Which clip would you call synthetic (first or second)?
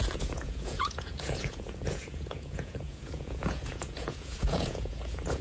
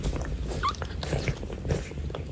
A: first